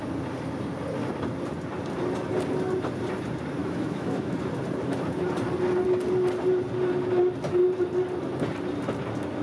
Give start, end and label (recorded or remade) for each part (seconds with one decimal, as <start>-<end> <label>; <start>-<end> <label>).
0.0-3.6 recorded; 3.6-4.4 remade; 4.4-9.4 recorded